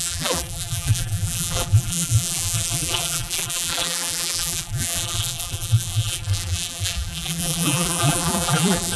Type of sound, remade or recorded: remade